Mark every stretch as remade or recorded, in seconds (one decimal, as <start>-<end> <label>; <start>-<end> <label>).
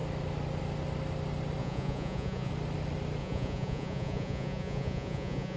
0.0-1.6 recorded; 1.6-2.5 remade; 2.5-3.2 recorded; 3.2-5.6 remade